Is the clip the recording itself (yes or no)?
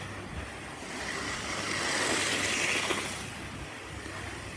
yes